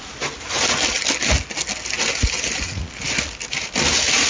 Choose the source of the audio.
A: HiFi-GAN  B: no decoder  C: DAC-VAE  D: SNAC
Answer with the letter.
B